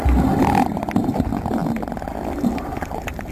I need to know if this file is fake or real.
real